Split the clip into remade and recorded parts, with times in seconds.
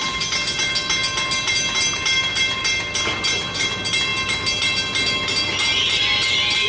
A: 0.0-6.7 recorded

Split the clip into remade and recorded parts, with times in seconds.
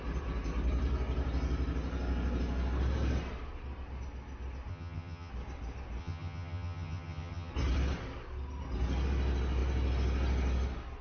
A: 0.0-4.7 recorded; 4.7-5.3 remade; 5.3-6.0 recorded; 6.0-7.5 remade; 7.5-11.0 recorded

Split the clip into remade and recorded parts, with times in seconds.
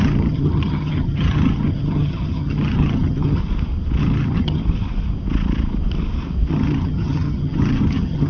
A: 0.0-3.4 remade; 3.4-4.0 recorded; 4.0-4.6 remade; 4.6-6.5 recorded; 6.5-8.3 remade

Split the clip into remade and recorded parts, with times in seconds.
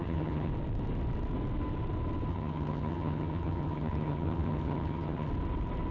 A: 0.0-0.5 remade; 0.5-2.3 recorded; 2.3-5.3 remade; 5.3-5.9 recorded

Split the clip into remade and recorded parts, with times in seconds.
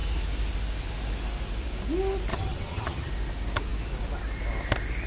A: 0.0-2.3 recorded; 2.3-3.1 remade; 3.1-5.1 recorded